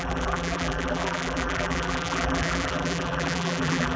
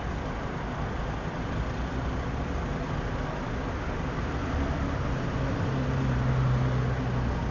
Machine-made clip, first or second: first